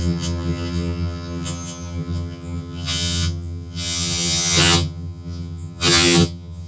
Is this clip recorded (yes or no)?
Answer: no